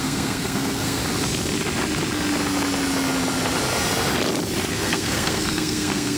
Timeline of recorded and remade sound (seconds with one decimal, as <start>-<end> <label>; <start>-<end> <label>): 0.0-1.0 remade; 1.0-4.7 recorded; 4.7-6.2 remade